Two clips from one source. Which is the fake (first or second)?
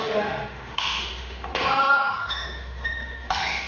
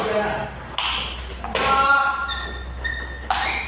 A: first